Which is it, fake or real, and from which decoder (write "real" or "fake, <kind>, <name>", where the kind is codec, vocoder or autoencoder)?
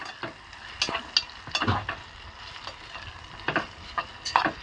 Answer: real